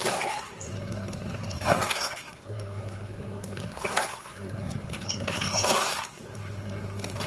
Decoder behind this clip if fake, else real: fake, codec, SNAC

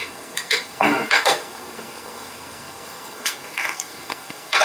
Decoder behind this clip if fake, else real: fake, codec, SNAC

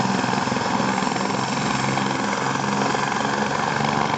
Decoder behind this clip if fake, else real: real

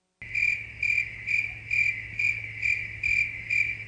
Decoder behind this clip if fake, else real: real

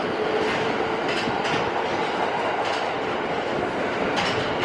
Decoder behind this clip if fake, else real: real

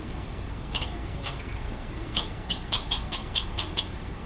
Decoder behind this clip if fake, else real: fake, codec, SNAC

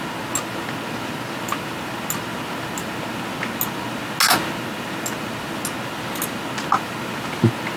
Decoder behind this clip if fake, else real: real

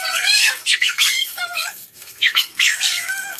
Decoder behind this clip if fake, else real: fake, codec, SNAC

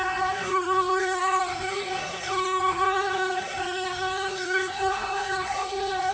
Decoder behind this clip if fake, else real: fake, codec, SNAC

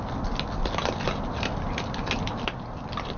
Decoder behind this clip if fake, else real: real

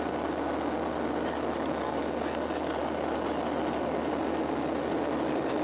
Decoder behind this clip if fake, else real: real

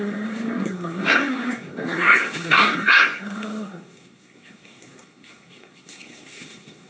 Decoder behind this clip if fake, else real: fake, codec, SNAC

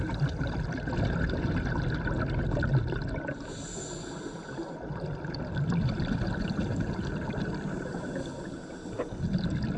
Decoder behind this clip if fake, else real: real